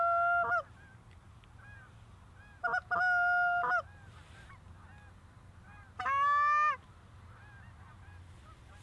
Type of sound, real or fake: real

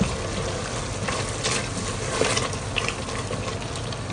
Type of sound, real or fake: real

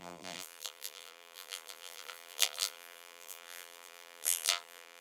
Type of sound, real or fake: fake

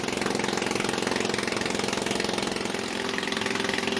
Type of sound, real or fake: real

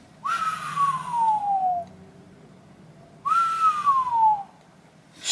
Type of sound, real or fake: real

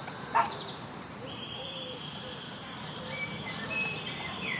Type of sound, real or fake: fake